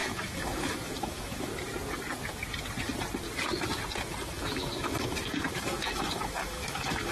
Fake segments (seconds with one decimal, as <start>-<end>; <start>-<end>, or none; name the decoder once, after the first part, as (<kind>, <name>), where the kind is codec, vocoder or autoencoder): 0.0-1.5 (autoencoder, DAC-VAE); 4.3-7.1